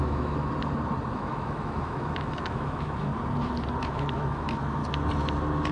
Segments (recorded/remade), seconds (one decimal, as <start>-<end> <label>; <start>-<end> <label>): 0.0-0.4 remade; 0.4-1.1 recorded; 1.1-3.1 remade; 3.1-3.8 recorded; 3.8-4.8 remade; 4.8-5.7 recorded